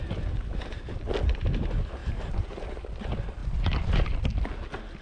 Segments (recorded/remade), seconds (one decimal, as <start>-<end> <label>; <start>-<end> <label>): 0.0-2.0 recorded; 2.0-3.0 remade; 3.0-3.4 recorded; 3.4-4.1 remade; 4.1-5.0 recorded